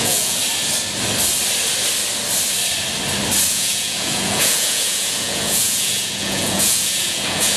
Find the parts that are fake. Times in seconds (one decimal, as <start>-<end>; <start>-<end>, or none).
0.0-0.4; 3.5-7.6